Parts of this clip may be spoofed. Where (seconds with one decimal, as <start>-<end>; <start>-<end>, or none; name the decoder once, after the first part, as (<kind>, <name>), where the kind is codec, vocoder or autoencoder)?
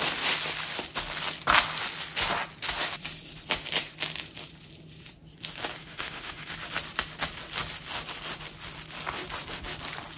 5.8-6.5 (autoencoder, DAC-VAE)